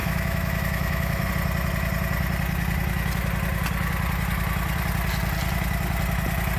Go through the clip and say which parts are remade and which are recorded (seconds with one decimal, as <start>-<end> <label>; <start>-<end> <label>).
0.0-1.3 remade; 1.3-6.6 recorded

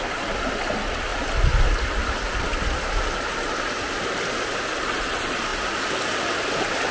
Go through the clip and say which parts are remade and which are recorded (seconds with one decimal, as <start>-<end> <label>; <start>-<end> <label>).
0.0-6.9 recorded

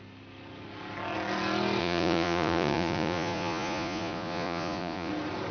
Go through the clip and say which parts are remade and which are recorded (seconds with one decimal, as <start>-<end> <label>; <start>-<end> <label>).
0.0-1.8 recorded; 1.8-5.1 remade; 5.1-5.5 recorded